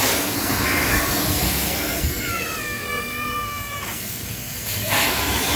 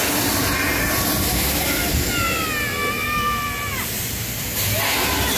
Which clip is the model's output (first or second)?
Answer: first